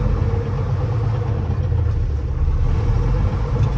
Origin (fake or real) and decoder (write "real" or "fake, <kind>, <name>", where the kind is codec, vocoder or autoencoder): real